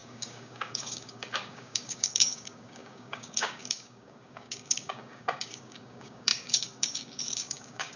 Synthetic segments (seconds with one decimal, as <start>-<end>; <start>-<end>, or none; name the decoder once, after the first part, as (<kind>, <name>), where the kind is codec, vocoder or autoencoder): 0.0-8.0 (codec, DAC)